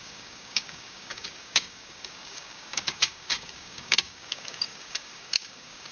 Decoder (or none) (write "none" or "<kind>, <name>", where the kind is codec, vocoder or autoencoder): codec, DAC